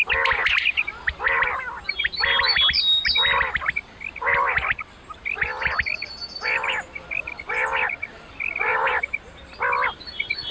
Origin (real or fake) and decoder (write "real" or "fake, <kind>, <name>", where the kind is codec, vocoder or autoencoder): real